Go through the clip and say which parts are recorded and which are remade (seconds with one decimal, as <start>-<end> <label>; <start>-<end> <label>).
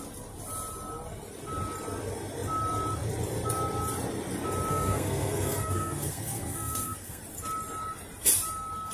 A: 0.0-4.7 recorded; 4.7-7.2 remade; 7.2-8.9 recorded